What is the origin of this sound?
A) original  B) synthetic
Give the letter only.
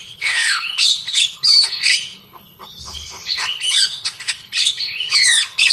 B